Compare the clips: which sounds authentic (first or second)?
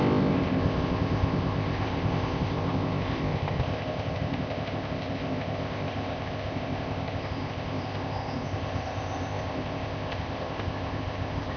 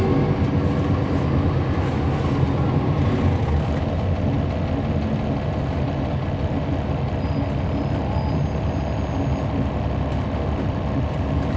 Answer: second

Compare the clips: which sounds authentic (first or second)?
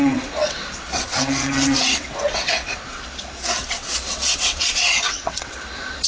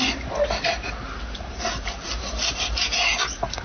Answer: second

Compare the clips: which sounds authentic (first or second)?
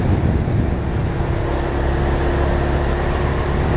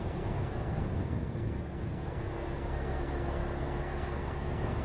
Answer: first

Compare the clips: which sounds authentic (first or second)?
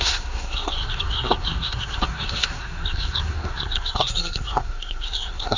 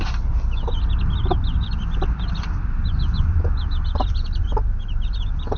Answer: second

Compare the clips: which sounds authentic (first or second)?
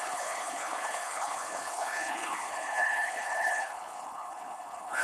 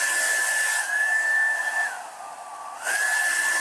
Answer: second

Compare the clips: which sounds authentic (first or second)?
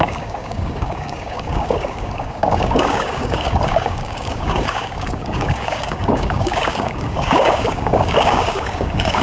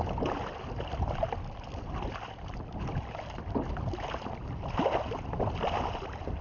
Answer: second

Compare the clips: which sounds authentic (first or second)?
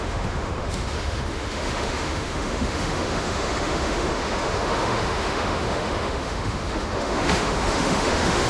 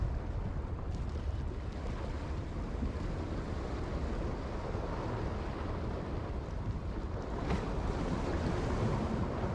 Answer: second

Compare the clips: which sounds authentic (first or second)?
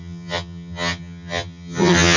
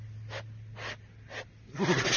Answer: second